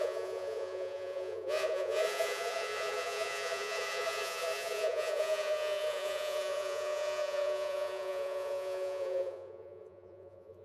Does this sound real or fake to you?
fake